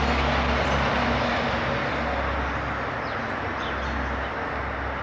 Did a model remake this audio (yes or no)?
no